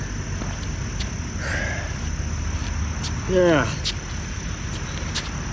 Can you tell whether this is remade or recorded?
recorded